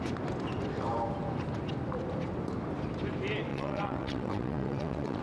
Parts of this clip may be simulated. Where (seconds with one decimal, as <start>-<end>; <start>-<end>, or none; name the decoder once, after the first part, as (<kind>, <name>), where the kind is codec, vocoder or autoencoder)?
3.5-5.2 (vocoder, WaveNeXt)

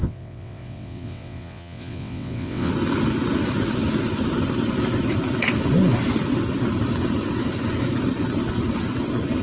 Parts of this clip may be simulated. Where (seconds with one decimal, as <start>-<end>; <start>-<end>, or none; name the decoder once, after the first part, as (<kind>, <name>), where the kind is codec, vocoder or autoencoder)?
0.0-2.7 (vocoder, WaveNeXt)

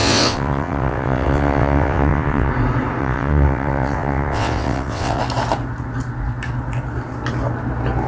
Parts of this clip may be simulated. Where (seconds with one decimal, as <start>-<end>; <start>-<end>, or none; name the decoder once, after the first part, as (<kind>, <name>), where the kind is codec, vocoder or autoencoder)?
0.0-2.5 (vocoder, WaveNeXt); 3.0-5.2

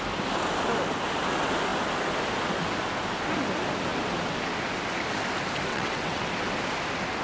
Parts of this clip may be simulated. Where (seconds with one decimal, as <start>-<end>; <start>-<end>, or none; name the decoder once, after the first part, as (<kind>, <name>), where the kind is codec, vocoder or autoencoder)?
5.7-6.3 (vocoder, WaveNeXt)